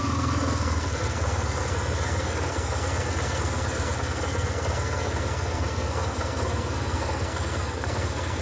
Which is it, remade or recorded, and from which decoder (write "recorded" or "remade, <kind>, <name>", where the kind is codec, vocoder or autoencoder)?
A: remade, codec, SNAC